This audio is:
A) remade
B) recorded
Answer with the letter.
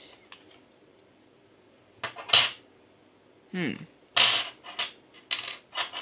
B